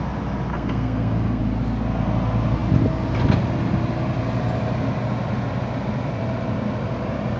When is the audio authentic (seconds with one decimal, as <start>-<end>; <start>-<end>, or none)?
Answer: 0.0-0.5; 1.4-7.4